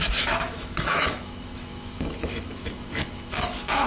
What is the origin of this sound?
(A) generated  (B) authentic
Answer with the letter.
A